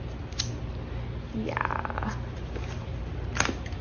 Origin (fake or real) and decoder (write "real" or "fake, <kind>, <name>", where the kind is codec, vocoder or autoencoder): real